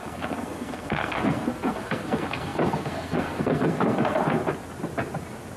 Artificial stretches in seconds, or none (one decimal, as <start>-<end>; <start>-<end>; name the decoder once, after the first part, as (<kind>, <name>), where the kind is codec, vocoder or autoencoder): 0.0-4.4 (codec, SNAC)